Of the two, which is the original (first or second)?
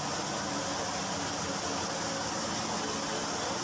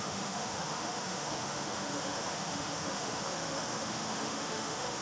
first